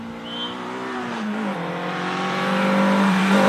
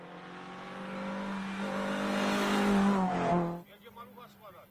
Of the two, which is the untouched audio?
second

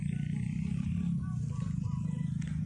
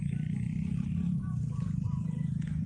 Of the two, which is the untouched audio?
first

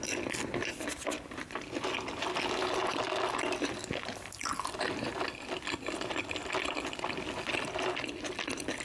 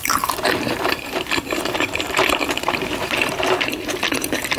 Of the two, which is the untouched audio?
first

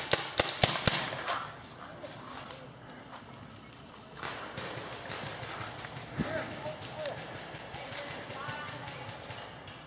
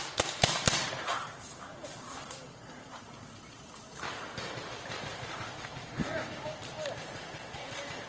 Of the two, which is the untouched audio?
first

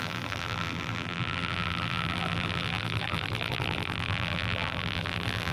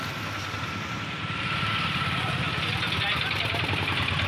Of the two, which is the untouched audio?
second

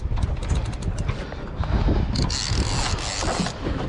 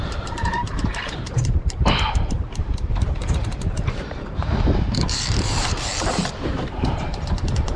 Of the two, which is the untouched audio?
first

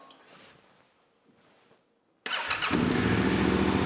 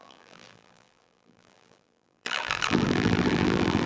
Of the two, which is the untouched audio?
first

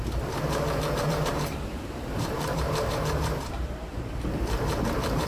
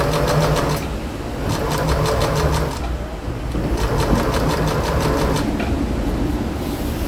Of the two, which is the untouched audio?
second